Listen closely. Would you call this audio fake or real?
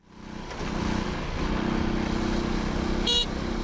real